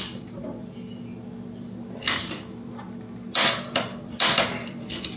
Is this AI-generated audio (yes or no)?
no